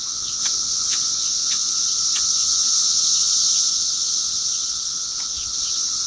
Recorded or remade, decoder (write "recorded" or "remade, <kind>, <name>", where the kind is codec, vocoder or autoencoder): remade, vocoder, WaveNeXt